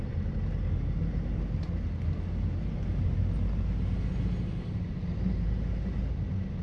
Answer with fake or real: real